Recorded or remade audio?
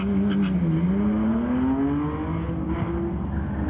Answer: recorded